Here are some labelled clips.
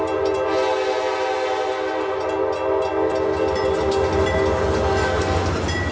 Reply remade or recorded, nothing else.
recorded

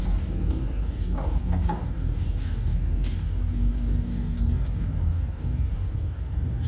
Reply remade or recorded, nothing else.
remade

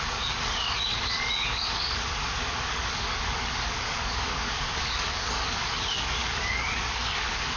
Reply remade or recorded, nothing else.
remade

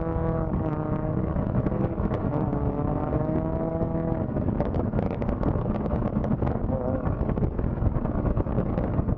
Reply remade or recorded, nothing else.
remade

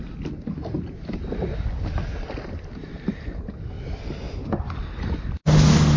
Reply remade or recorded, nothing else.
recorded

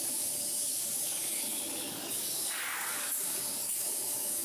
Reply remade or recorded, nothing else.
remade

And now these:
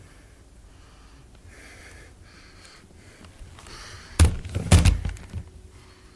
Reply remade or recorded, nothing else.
recorded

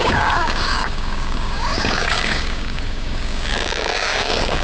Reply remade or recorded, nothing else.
remade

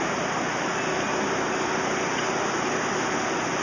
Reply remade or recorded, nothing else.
recorded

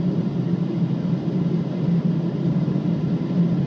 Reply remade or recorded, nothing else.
recorded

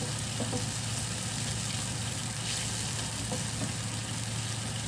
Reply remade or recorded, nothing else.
recorded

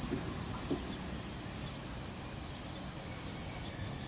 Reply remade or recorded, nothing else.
recorded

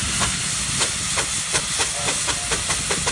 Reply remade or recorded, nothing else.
recorded